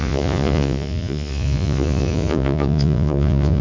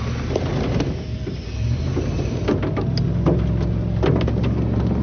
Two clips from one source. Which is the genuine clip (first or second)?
second